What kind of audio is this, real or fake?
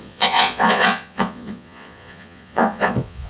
fake